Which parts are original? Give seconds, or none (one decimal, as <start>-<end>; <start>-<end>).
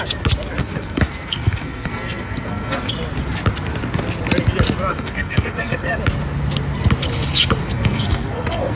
0.0-0.6; 2.9-4.9; 6.0-7.6